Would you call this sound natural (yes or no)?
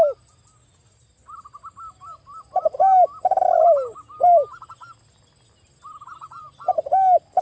yes